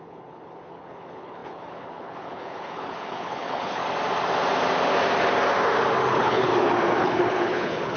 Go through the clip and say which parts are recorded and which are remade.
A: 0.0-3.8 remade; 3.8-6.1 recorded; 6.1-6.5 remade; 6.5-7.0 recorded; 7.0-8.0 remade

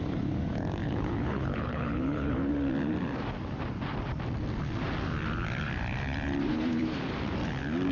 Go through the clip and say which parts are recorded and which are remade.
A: 0.0-0.8 recorded; 0.8-2.5 remade; 2.5-6.5 recorded; 6.5-7.0 remade; 7.0-7.9 recorded

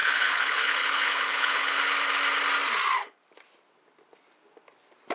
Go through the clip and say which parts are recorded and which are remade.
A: 0.0-1.8 remade; 1.8-5.1 recorded